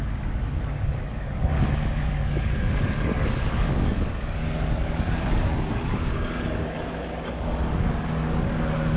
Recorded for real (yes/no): no